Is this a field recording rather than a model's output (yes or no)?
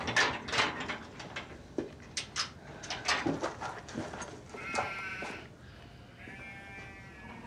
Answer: yes